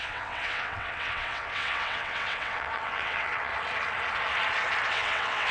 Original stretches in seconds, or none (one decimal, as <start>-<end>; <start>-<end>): 3.5-4.9